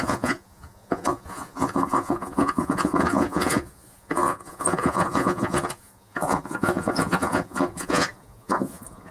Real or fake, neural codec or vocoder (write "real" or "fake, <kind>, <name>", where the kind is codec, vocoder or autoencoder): fake, vocoder, Vocos